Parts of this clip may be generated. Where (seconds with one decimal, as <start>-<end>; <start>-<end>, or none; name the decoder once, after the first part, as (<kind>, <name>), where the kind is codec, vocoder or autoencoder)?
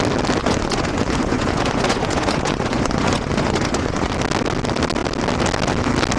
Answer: 0.4-4.1 (vocoder, Vocos)